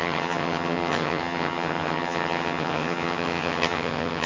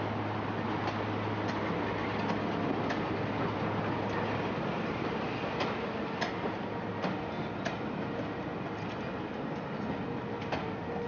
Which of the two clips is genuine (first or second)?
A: second